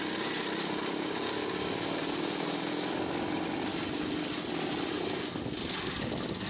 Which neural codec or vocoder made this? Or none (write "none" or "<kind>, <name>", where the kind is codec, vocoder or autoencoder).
none